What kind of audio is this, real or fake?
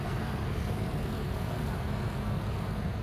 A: fake